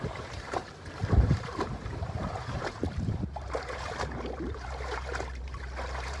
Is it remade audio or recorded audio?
remade